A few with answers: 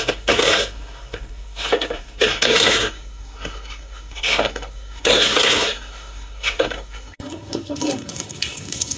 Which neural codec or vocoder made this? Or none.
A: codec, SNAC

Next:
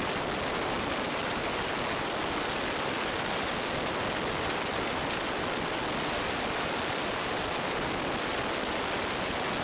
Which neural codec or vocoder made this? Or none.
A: none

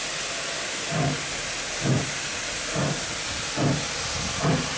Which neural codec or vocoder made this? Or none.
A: none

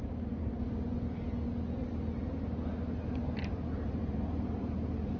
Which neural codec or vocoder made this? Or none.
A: none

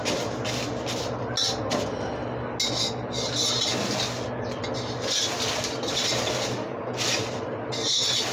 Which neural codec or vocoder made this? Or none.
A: none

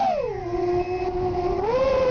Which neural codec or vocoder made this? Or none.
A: none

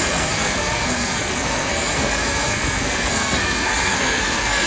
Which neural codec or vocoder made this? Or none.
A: codec, SNAC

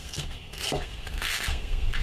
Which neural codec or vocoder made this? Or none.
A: codec, SNAC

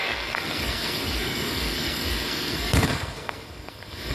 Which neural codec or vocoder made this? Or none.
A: codec, SNAC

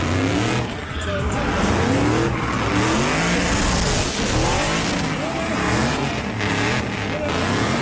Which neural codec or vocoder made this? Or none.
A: none